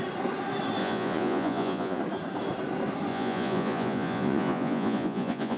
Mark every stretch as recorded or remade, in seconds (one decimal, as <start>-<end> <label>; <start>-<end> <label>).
0.0-0.8 recorded; 0.8-2.0 remade; 2.0-3.1 recorded; 3.1-5.6 remade